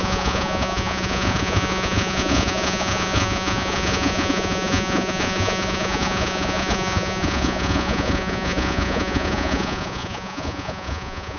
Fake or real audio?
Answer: fake